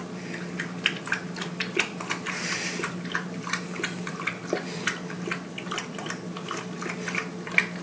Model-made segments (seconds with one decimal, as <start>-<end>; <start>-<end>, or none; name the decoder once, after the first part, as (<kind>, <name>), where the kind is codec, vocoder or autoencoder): none